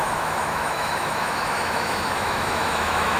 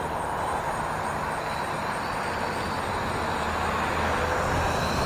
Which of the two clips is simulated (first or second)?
first